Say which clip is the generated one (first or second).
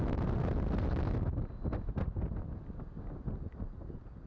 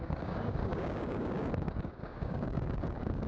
second